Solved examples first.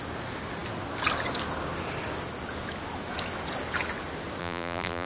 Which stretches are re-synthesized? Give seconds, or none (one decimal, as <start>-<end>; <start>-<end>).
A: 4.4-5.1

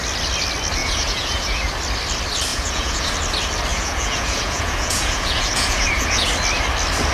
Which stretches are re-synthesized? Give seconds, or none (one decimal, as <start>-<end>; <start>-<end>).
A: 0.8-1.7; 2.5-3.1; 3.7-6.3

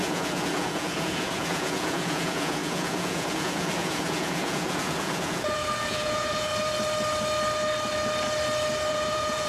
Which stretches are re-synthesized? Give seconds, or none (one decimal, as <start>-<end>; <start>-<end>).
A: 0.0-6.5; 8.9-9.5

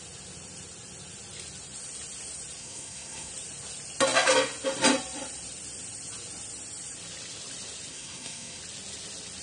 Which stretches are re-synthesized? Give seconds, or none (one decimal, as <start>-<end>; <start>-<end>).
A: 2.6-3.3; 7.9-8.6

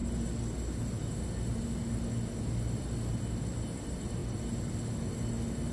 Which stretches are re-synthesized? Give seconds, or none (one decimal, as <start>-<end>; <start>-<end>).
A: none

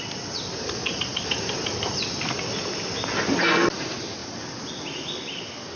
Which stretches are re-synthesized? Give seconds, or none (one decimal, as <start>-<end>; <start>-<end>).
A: none

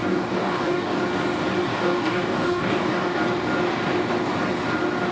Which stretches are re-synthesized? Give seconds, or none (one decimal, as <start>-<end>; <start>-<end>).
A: 0.0-1.0; 1.7-3.2

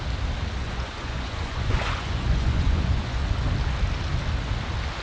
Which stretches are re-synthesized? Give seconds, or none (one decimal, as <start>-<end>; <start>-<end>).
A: 0.6-3.2